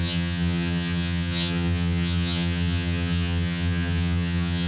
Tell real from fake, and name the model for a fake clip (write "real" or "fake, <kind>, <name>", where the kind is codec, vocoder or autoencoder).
fake, vocoder, HiFi-GAN